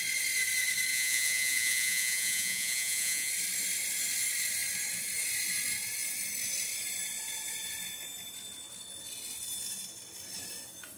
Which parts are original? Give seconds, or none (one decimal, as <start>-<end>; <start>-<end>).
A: 0.0-0.9; 3.3-11.0

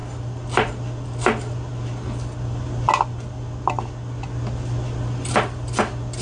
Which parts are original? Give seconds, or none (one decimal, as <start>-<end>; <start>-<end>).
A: 0.0-6.2